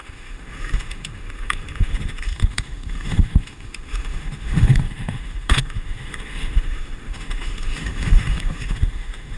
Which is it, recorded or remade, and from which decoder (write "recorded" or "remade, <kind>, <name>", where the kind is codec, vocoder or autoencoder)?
remade, autoencoder, DAC-VAE